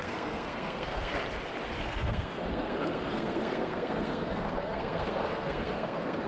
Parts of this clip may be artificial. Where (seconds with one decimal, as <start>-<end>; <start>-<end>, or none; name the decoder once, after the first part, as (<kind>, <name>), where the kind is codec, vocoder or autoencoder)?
0.0-1.2 (codec, SNAC); 1.8-6.3

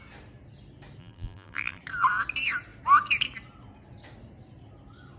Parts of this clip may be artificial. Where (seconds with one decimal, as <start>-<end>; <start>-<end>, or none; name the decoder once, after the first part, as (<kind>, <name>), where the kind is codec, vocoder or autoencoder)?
1.0-1.8 (vocoder, BigVGAN v2)

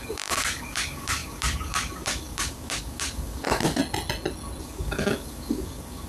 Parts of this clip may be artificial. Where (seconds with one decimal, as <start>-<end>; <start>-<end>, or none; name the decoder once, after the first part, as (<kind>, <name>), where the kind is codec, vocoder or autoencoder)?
0.0-3.8 (codec, DAC); 4.6-6.1

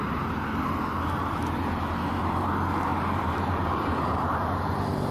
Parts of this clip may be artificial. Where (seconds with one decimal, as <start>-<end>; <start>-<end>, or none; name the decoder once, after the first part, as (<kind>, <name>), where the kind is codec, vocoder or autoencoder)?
2.9-5.1 (vocoder, BigVGAN v2)

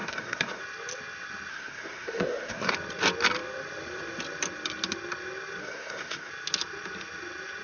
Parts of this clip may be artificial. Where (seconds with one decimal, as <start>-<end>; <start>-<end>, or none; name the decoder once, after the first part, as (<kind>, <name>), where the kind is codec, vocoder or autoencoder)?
0.0-0.6 (codec, SNAC); 1.5-2.7; 5.6-6.3

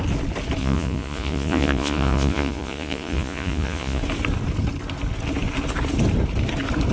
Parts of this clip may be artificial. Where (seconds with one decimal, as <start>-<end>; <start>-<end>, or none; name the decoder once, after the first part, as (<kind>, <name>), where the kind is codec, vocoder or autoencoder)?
0.6-4.0 (vocoder, Vocos)

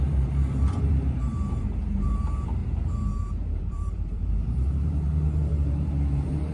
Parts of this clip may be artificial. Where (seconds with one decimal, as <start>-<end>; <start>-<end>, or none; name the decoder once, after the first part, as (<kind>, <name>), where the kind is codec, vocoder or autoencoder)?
0.0-6.5 (vocoder, BigVGAN v2)

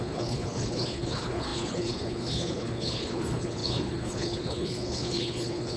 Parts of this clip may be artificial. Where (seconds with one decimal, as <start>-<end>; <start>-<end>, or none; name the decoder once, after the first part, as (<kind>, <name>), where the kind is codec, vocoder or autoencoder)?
0.0-5.8 (codec, HILCodec)